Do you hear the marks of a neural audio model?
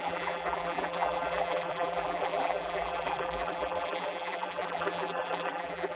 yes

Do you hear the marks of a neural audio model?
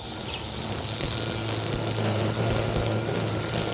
no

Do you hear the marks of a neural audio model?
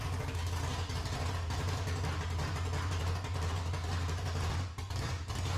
no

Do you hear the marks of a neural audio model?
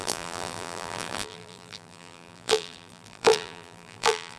yes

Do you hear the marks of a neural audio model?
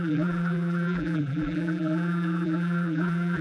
yes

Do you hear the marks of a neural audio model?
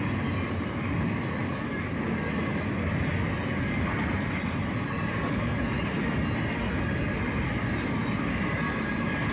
no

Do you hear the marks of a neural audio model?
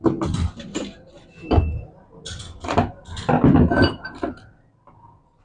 no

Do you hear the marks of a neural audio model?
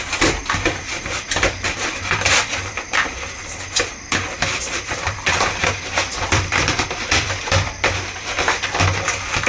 yes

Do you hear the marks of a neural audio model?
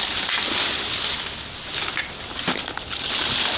no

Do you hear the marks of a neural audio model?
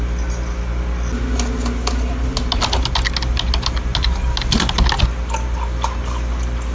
no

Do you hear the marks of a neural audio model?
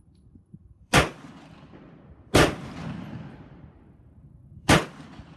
yes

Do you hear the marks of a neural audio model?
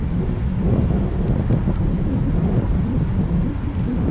no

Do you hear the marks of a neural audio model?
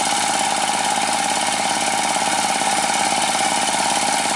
yes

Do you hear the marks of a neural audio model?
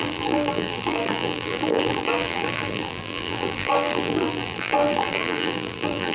yes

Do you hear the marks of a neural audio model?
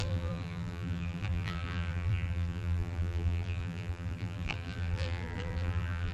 yes